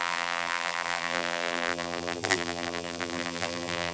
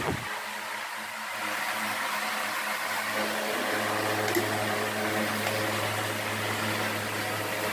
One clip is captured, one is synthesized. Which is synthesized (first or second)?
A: first